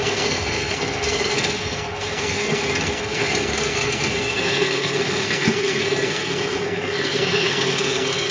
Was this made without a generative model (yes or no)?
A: no